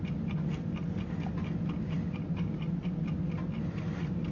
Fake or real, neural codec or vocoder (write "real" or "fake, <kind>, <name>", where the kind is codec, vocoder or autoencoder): real